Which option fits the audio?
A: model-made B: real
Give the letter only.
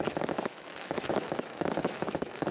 A